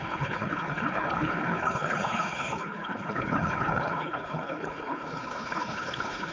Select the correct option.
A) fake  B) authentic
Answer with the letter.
A